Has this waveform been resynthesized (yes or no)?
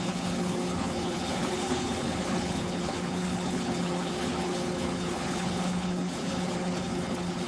yes